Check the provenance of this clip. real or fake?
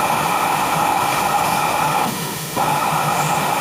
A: fake